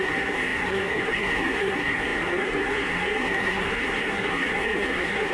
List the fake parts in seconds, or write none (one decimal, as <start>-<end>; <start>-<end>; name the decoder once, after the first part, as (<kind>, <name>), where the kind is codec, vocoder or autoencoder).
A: 0.0-5.3 (codec, SNAC)